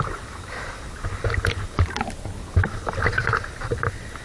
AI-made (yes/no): no